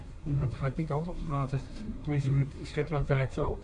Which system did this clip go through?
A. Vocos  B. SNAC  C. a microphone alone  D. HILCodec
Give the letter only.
B